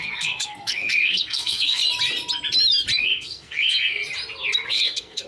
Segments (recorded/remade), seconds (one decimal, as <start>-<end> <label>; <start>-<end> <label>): 0.0-1.8 remade; 1.8-3.0 recorded; 3.0-4.0 remade; 4.0-4.7 recorded; 4.7-5.3 remade